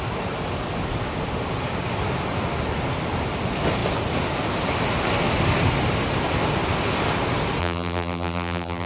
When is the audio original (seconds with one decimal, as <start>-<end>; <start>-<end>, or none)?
0.0-7.6